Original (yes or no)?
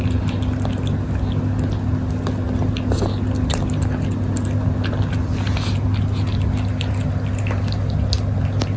yes